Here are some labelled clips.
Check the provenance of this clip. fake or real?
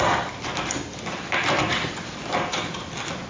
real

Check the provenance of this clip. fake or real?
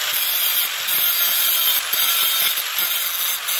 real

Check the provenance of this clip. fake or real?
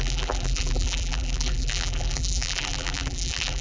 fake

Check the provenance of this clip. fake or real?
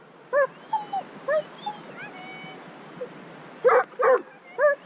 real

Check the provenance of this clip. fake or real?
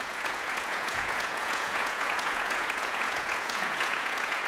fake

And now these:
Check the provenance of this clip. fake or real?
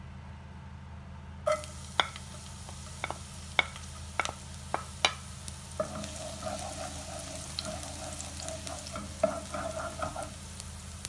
real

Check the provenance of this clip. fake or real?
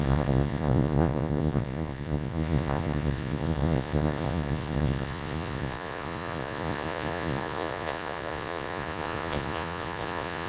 fake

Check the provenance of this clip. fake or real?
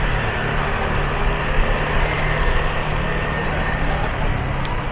real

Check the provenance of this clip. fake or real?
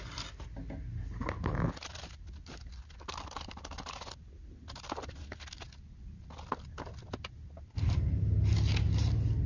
real